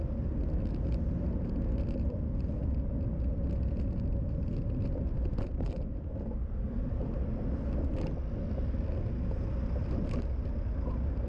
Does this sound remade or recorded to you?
recorded